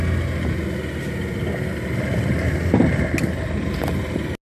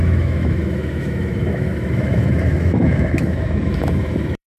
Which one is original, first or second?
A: first